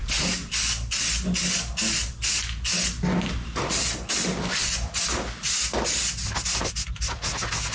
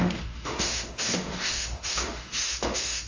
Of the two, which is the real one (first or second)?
first